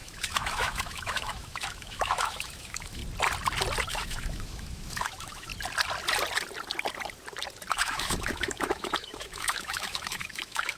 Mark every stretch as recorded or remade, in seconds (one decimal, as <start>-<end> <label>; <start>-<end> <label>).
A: 0.0-3.0 remade; 3.0-3.9 recorded; 3.9-5.5 remade; 5.5-7.7 recorded; 7.7-10.8 remade

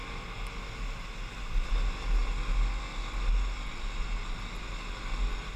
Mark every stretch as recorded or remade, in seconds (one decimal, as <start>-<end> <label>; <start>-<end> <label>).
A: 0.0-5.6 recorded